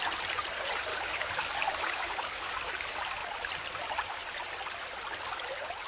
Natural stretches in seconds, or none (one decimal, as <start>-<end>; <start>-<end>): 0.0-0.9; 2.7-5.9